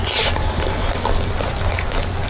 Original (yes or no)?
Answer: yes